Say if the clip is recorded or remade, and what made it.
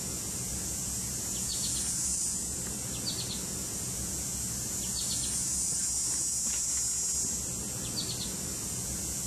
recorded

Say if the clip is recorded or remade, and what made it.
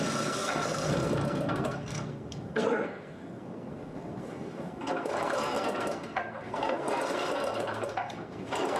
remade, codec, SNAC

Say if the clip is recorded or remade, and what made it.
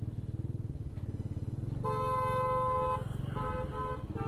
recorded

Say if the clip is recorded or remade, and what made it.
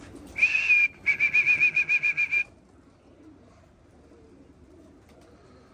recorded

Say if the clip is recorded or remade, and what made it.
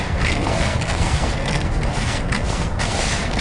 remade, codec, SNAC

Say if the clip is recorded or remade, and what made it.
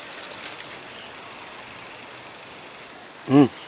recorded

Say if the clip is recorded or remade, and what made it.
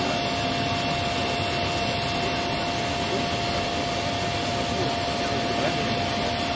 recorded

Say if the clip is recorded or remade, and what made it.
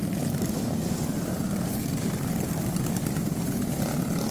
recorded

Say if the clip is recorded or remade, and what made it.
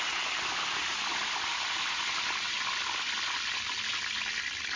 recorded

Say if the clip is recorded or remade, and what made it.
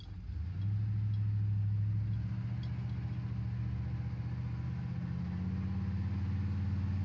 recorded